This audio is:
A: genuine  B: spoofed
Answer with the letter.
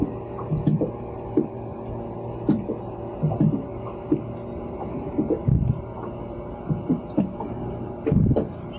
A